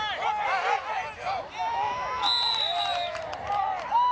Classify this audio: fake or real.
real